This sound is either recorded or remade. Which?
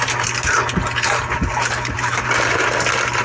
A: recorded